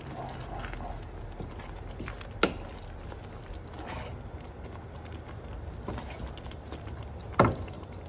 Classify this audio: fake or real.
real